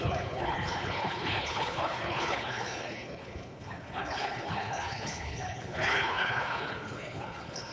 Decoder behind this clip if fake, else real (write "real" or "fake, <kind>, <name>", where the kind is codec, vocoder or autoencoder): fake, codec, HILCodec